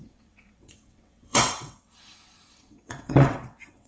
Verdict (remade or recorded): remade